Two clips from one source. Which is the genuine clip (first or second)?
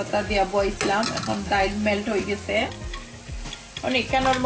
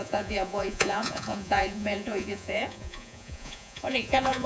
first